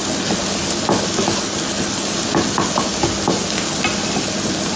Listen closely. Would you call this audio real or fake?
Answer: real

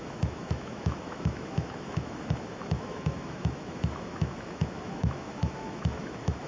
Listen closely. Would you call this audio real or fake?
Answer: fake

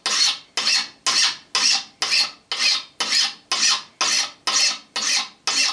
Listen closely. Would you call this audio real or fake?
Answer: real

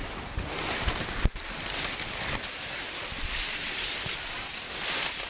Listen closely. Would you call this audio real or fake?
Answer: real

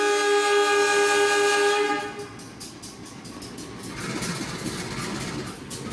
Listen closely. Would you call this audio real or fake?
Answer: real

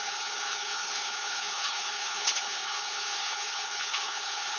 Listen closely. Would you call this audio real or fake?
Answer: fake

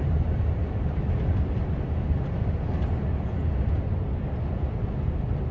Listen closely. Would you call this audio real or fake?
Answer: real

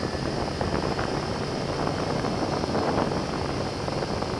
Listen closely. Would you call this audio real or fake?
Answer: real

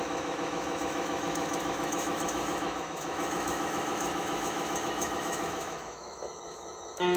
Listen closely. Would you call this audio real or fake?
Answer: fake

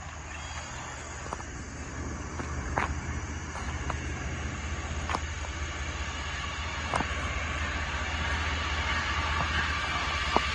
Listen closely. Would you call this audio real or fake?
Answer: real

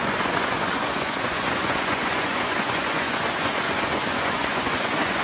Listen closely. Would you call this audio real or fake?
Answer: fake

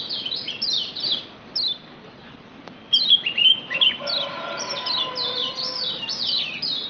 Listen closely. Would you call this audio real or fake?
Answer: fake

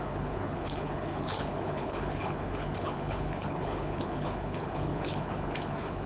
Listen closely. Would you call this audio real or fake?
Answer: fake